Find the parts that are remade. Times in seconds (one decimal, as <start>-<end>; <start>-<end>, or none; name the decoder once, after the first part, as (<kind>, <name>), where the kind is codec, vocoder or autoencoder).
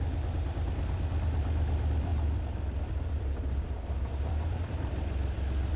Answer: 0.0-5.8 (vocoder, BigVGAN v2)